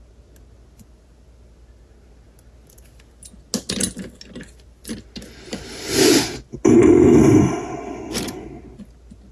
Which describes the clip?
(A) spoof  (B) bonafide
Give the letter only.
B